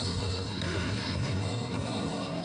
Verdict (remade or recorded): remade